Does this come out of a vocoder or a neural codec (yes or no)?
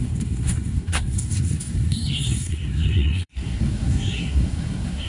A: yes